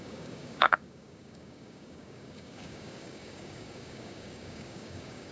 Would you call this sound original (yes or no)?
no